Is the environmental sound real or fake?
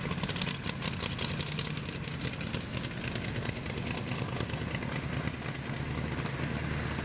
real